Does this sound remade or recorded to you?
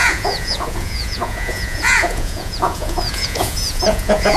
remade